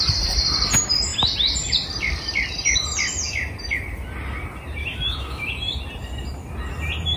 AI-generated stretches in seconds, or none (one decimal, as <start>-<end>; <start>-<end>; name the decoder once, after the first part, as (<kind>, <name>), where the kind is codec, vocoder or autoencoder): 4.8-5.6 (autoencoder, DAC-VAE)